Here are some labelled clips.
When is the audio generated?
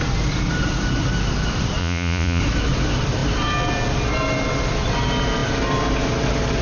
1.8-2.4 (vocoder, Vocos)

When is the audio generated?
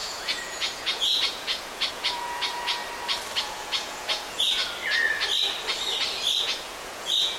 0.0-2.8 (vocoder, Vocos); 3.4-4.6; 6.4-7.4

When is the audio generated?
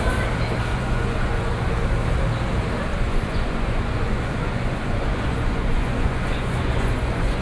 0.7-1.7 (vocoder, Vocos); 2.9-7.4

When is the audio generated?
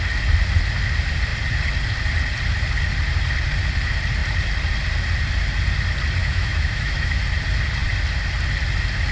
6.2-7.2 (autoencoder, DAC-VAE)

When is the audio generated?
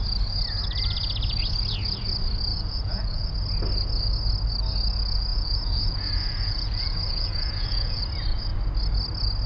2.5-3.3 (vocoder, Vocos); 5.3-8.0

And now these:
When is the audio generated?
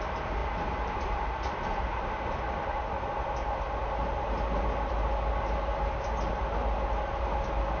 none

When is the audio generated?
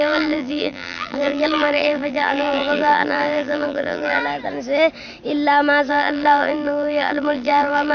0.0-4.2 (vocoder, BigVGAN v2); 5.9-7.9